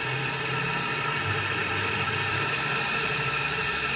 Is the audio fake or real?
fake